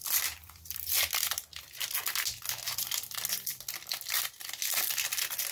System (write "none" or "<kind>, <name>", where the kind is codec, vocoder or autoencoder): none